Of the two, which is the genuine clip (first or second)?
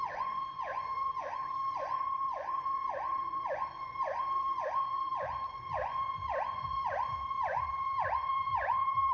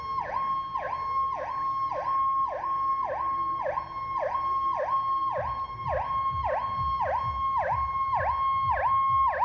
second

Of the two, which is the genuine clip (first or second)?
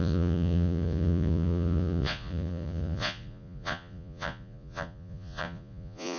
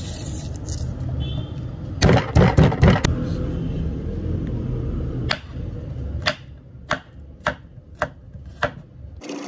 second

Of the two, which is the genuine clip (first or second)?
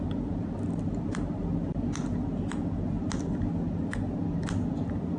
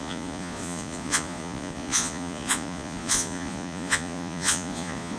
first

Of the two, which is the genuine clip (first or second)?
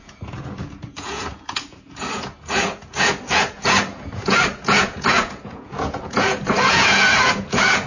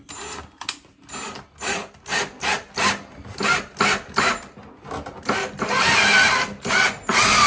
second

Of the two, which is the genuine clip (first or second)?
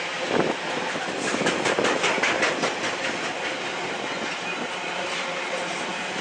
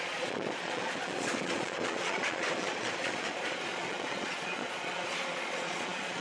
first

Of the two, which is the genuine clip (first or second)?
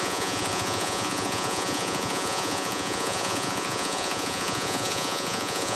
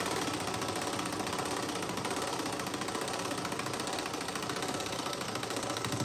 second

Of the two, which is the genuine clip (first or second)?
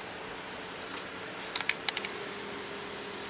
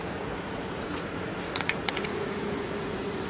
first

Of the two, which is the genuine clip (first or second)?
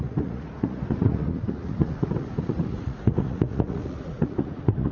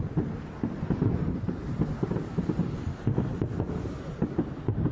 second